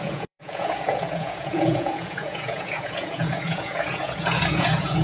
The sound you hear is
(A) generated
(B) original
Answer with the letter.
A